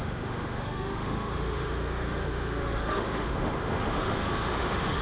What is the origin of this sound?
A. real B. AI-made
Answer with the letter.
B